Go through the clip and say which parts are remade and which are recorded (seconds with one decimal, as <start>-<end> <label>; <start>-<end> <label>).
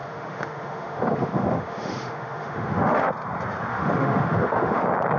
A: 0.0-3.1 remade; 3.1-3.7 recorded; 3.7-4.8 remade; 4.8-5.2 recorded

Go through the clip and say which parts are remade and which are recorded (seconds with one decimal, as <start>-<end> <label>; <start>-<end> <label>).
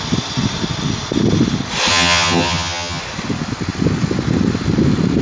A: 0.0-1.9 recorded; 1.9-3.0 remade; 3.0-5.2 recorded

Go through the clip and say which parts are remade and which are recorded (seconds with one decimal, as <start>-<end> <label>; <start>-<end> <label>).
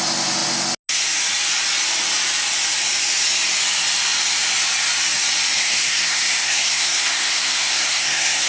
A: 0.0-5.6 recorded; 5.6-8.5 remade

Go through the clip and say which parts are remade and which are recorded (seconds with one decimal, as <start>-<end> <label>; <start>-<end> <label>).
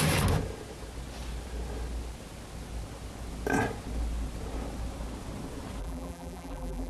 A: 0.0-5.8 recorded; 5.8-6.9 remade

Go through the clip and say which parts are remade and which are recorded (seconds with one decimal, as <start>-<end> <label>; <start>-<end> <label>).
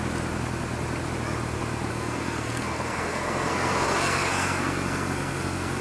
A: 0.0-1.9 recorded; 1.9-5.8 remade